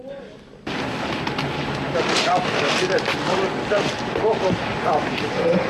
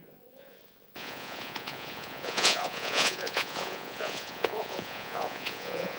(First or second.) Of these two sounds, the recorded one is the first